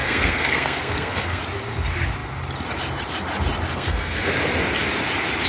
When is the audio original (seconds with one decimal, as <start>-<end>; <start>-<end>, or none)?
1.4-3.7; 4.3-5.5